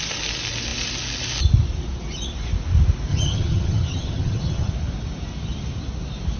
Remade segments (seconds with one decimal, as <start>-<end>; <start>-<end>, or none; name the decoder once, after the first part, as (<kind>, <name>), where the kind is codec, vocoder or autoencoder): 3.1-4.7 (vocoder, HiFi-GAN)